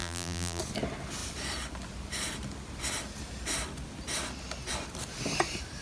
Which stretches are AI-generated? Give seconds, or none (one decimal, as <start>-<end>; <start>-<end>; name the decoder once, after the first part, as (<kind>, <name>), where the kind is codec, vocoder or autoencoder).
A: 0.0-0.6 (vocoder, BigVGAN v2)